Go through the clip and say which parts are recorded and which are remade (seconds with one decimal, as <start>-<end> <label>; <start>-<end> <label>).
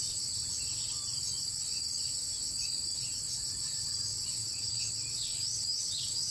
0.0-0.4 remade; 0.4-3.8 recorded; 3.8-5.3 remade; 5.3-5.8 recorded; 5.8-6.3 remade